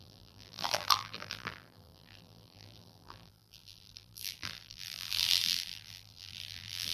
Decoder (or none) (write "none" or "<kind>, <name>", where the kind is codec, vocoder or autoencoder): vocoder, BigVGAN v2